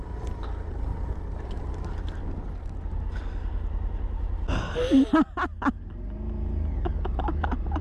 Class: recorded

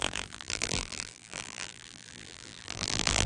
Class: remade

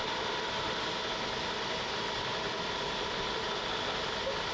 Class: recorded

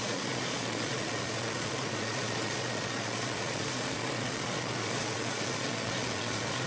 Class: remade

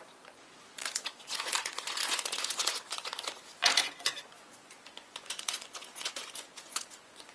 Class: remade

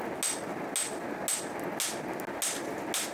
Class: recorded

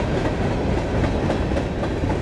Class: recorded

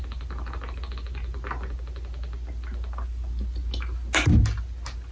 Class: recorded